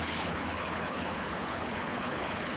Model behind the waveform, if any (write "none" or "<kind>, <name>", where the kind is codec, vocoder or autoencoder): codec, HILCodec